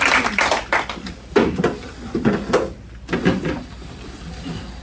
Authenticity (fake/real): fake